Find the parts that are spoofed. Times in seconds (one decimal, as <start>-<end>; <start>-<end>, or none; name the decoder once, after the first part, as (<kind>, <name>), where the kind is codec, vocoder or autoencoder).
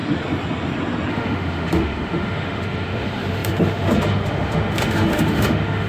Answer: 1.1-5.9 (autoencoder, DAC-VAE)